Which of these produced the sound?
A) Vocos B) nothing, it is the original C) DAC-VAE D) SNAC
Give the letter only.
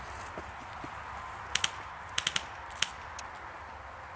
B